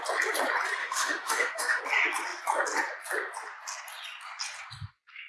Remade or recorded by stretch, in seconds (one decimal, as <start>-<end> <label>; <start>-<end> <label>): 0.0-0.8 recorded; 0.8-1.8 remade; 1.8-5.3 recorded